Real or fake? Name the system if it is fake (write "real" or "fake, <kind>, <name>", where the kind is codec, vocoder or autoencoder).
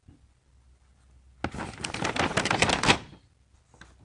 real